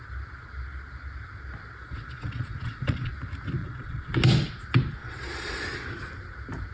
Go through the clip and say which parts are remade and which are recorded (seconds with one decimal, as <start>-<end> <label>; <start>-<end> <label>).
0.0-1.8 recorded; 1.8-3.1 remade; 3.1-3.6 recorded; 3.6-4.1 remade; 4.1-5.0 recorded; 5.0-5.6 remade; 5.6-6.7 recorded